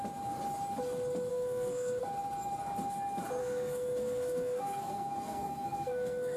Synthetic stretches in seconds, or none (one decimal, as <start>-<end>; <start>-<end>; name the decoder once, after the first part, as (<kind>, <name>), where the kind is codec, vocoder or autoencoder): 1.3-2.0 (codec, SNAC); 3.4-6.4